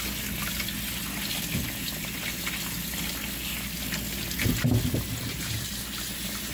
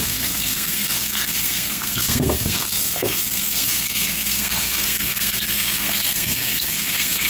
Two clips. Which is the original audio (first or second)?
first